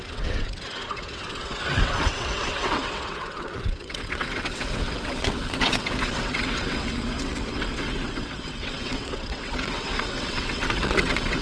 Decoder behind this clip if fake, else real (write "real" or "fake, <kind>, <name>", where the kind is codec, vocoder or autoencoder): fake, vocoder, WaveNeXt